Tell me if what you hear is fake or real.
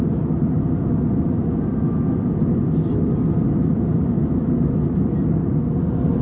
real